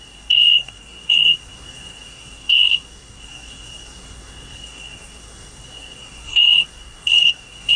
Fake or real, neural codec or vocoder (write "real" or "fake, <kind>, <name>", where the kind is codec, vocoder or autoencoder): fake, codec, SNAC